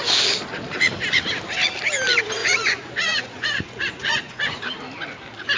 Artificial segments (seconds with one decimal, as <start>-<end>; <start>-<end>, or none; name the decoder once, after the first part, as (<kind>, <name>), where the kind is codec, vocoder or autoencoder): 2.4-4.6 (vocoder, Vocos)